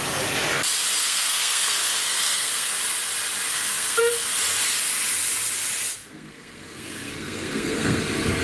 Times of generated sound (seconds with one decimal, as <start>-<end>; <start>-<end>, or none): 1.0-2.7; 3.5-4.0; 6.0-8.0